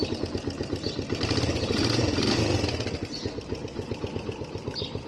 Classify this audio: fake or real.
real